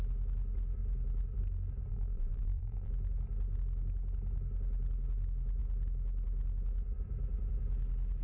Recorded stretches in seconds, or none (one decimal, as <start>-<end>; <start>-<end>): 0.0-1.9; 2.9-8.2